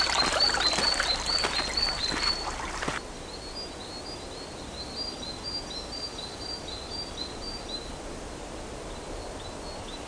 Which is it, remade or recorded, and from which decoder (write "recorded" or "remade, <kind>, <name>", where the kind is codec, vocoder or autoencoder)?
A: recorded